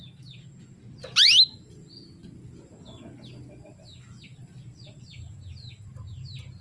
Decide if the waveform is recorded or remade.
recorded